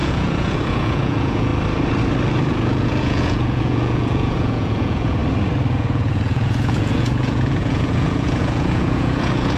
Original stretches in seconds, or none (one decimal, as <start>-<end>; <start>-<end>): 1.5-2.5; 5.2-5.7